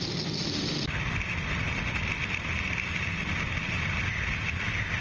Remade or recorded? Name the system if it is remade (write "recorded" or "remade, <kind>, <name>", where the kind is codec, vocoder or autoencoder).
recorded